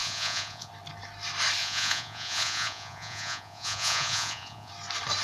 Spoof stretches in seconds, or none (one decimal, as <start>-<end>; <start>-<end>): 0.0-0.7; 1.6-4.7